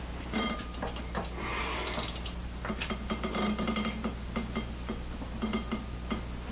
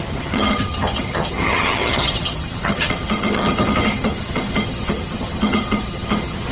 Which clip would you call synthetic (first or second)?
second